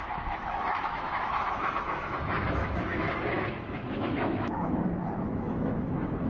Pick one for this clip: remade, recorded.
remade